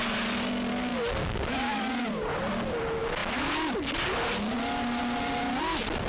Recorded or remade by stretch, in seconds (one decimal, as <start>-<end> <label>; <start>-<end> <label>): 0.0-6.1 recorded